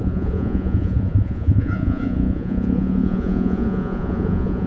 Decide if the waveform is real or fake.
fake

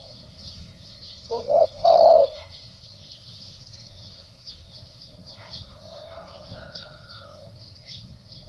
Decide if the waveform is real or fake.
fake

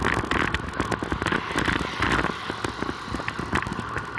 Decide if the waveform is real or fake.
real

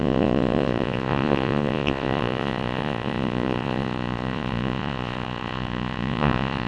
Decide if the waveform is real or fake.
fake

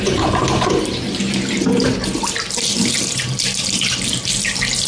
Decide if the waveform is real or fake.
fake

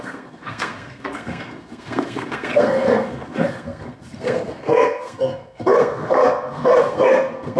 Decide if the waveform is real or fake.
fake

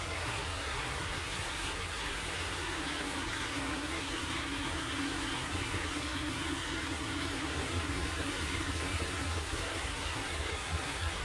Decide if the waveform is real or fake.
fake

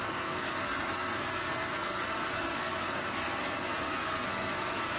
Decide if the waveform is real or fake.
fake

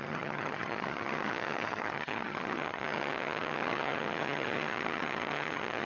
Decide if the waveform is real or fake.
fake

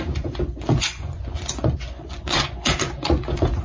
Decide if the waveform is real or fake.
fake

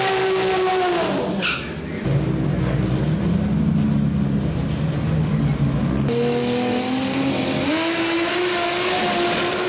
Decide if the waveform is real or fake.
real